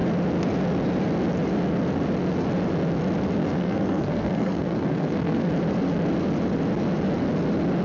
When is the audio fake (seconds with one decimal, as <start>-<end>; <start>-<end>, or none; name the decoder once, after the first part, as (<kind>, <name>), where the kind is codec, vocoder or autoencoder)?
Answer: 3.4-5.5 (codec, SNAC)